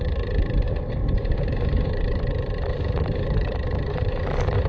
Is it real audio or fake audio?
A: fake